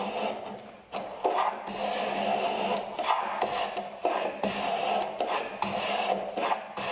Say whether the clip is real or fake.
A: real